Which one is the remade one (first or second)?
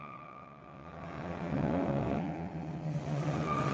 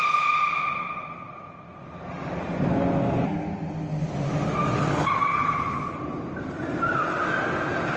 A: first